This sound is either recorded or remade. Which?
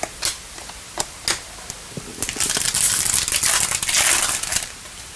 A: recorded